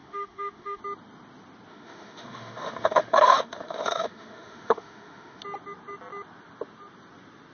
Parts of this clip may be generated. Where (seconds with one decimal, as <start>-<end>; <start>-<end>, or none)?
0.0-0.8; 1.7-5.4